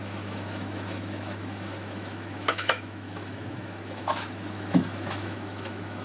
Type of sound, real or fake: fake